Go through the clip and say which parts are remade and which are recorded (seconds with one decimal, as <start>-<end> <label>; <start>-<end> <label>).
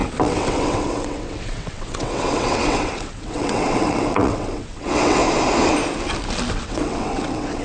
0.0-5.2 remade; 5.2-6.5 recorded; 6.5-7.6 remade